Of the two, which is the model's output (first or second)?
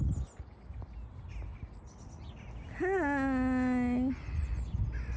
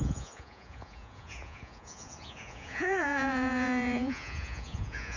second